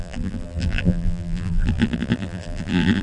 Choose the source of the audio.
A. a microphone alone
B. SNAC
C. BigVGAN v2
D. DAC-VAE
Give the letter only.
C